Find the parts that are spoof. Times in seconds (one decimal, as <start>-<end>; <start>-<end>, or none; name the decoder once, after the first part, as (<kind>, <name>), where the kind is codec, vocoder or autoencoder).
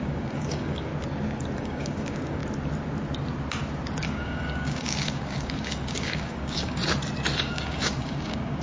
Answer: 0.0-0.9 (codec, DAC); 1.6-2.4; 4.0-6.8; 7.4-8.6